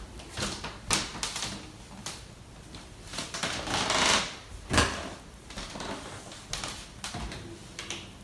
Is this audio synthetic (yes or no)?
no